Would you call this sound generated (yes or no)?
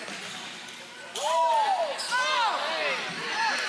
no